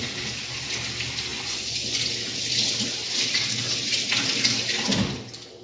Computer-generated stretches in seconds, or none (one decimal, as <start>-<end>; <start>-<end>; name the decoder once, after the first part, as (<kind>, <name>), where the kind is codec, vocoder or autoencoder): 1.3-2.0 (vocoder, Vocos)